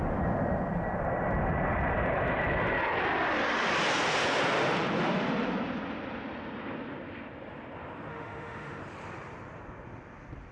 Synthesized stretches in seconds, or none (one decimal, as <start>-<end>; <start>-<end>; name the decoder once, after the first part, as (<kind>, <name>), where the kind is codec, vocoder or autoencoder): 8.1-8.8 (autoencoder, DAC-VAE)